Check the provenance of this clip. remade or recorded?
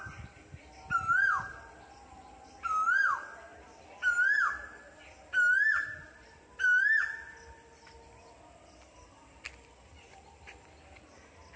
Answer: recorded